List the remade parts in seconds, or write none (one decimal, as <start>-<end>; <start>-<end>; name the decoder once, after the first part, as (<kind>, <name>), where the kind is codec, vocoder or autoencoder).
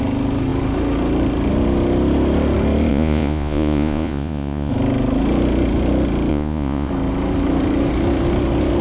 2.9-4.7 (vocoder, Vocos); 6.3-6.9